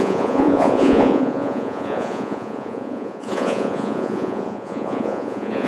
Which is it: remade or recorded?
remade